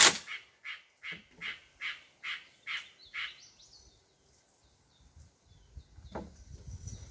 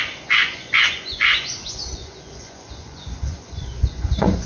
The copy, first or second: second